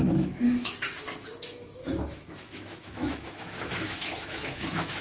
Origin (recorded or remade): remade